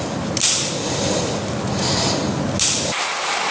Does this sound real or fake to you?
real